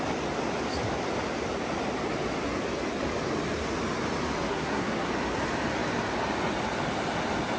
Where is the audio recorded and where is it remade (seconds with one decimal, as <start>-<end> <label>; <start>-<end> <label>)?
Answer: 0.0-4.5 recorded; 4.5-5.1 remade; 5.1-7.6 recorded